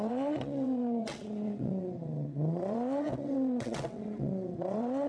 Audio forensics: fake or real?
fake